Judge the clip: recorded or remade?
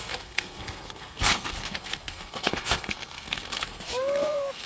remade